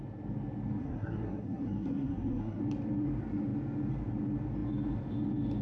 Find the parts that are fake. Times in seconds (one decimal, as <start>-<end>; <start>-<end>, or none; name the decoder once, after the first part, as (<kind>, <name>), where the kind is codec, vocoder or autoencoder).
0.8-2.6 (codec, SNAC)